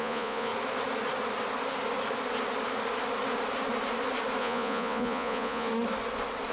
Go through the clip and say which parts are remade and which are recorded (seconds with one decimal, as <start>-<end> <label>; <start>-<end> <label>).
0.0-0.5 remade; 0.5-4.4 recorded; 4.4-5.7 remade; 5.7-6.5 recorded